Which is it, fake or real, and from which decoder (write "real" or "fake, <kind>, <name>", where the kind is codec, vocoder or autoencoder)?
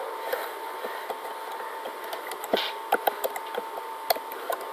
real